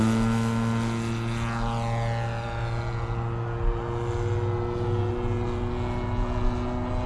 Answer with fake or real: real